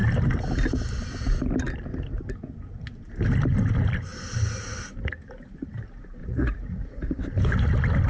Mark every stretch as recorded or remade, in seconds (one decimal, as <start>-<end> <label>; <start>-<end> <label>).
0.0-6.2 recorded; 6.2-7.2 remade; 7.2-8.1 recorded